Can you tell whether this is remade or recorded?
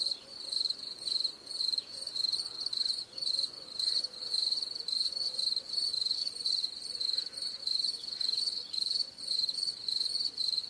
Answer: remade